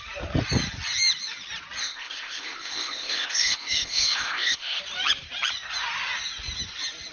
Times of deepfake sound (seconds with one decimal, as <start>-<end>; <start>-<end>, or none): 1.8-4.8